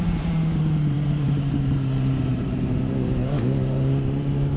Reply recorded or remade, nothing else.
remade